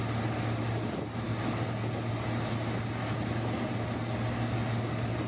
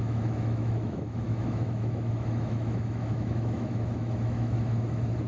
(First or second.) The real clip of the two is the first